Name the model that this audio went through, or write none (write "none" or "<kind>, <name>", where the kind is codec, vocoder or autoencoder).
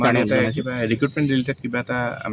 none